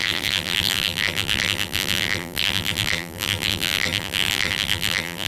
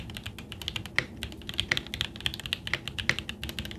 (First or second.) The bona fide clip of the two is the second